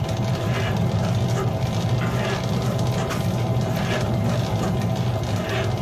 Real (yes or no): yes